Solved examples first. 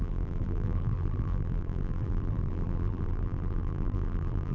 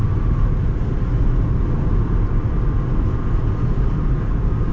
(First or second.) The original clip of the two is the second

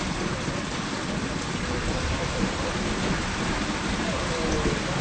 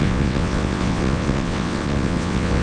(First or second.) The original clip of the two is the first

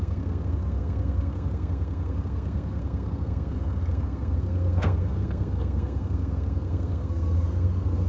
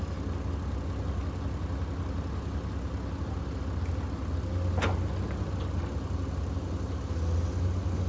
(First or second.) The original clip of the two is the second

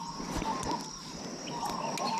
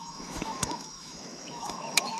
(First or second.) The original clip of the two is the first